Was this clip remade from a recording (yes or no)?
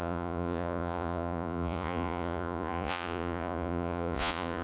yes